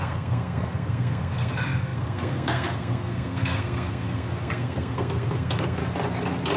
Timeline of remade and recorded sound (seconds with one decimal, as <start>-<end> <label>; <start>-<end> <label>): 0.0-5.8 remade; 5.8-6.6 recorded